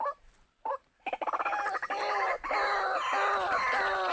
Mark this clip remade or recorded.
recorded